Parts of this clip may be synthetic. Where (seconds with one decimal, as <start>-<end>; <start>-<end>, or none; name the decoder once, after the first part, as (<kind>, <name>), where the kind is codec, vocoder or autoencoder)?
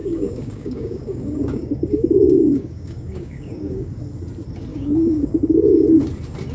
0.0-3.9 (codec, DAC); 4.7-6.0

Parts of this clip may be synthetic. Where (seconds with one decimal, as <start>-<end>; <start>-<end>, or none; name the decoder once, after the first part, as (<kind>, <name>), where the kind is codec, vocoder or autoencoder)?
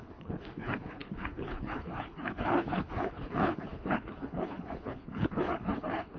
0.0-6.2 (codec, HILCodec)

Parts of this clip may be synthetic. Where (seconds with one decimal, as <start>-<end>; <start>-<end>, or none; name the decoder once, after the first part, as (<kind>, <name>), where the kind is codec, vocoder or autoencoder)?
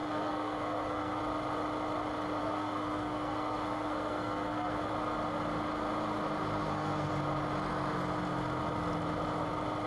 0.0-1.2 (codec, SNAC); 2.4-4.9; 6.6-7.1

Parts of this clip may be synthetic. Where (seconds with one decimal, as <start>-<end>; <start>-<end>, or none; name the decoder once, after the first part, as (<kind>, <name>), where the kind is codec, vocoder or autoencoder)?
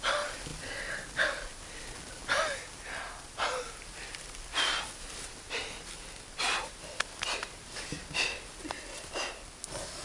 none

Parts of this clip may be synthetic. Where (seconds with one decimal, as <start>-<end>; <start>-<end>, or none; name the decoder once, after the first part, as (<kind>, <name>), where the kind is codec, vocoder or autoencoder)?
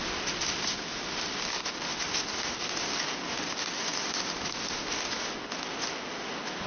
0.0-3.9 (vocoder, BigVGAN v2); 4.6-6.7